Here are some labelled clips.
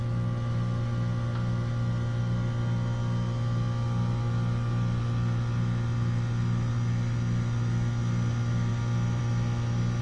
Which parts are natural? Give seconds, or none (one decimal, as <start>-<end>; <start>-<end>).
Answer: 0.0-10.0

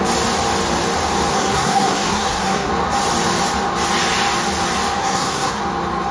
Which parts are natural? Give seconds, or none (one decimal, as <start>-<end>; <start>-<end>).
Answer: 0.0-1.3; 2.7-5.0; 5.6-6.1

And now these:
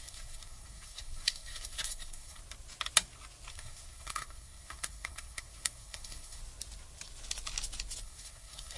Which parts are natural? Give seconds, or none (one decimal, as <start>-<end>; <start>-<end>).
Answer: 2.4-3.5; 6.4-8.0

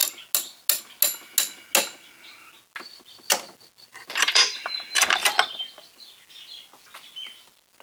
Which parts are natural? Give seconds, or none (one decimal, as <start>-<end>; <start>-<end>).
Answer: 0.0-3.9; 4.5-7.8